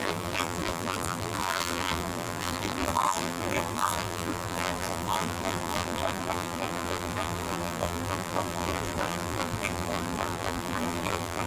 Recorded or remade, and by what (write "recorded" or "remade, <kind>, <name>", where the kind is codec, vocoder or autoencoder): remade, vocoder, BigVGAN v2